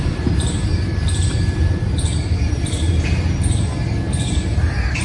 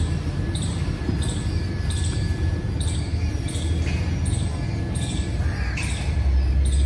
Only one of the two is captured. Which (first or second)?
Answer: second